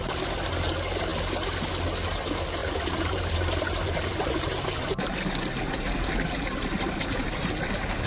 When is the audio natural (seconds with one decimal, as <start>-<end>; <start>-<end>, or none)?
0.0-2.6; 7.5-8.1